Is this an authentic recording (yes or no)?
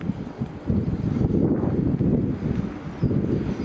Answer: yes